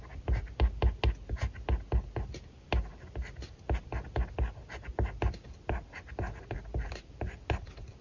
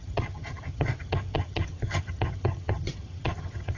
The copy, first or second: second